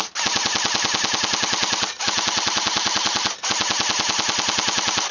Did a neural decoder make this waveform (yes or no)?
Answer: no